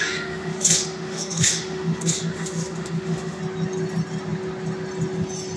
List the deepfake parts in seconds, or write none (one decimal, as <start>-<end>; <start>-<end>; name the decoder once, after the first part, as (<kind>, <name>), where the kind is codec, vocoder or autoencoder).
0.0-3.4 (autoencoder, DAC-VAE)